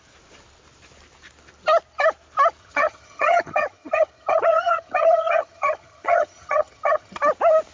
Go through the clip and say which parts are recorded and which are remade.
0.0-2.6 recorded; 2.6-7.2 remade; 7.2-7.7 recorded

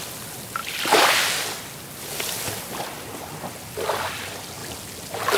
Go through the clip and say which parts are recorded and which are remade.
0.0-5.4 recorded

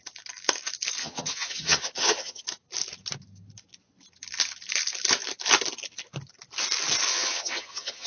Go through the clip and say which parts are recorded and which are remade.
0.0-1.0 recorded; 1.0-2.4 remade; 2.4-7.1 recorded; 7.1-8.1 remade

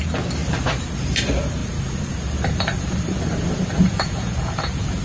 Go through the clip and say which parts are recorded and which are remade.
0.0-3.8 recorded; 3.8-5.0 remade